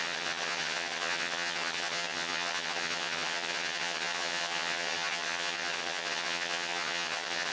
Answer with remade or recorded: remade